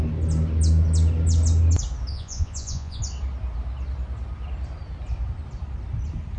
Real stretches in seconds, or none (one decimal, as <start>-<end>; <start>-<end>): 0.0-2.1; 3.0-6.4